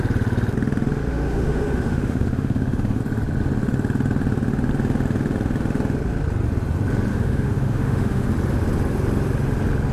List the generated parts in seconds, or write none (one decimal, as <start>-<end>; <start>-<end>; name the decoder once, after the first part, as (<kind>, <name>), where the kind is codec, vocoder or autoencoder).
1.1-3.0 (autoencoder, DAC-VAE); 7.1-8.3